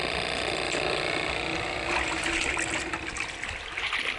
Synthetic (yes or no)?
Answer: no